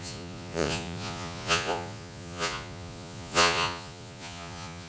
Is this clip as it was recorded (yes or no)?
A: no